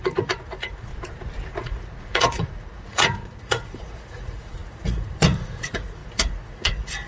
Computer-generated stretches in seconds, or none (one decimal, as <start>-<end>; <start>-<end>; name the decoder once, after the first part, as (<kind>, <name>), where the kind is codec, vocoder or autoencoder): 0.0-0.9 (vocoder, Vocos); 1.5-7.1